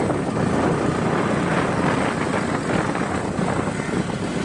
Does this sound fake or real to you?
real